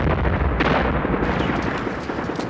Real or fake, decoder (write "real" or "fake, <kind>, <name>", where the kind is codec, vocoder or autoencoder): real